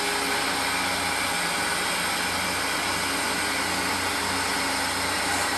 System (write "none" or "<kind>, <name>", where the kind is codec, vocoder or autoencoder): none